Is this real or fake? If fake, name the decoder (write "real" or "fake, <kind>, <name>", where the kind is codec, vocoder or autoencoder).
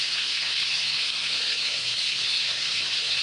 fake, codec, SNAC